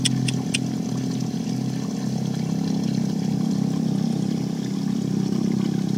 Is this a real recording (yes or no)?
yes